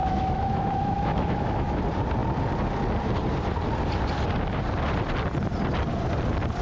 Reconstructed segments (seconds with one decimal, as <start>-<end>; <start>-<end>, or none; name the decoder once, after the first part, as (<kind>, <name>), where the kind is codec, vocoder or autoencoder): 0.0-1.8 (autoencoder, DAC-VAE)